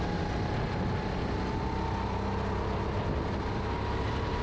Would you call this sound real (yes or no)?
yes